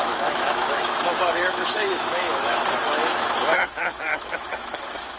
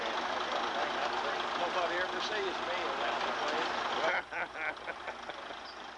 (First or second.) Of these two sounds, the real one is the second